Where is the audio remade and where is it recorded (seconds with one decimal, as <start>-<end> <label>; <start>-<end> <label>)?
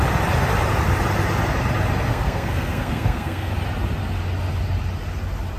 0.0-2.1 recorded; 2.1-3.5 remade; 3.5-5.6 recorded